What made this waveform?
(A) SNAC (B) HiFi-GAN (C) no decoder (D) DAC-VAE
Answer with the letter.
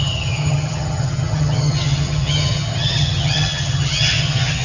B